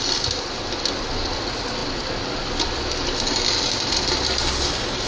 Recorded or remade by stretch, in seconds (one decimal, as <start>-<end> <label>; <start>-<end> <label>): 0.0-5.1 recorded